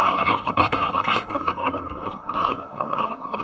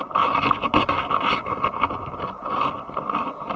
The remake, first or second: first